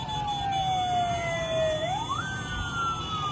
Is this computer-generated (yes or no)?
no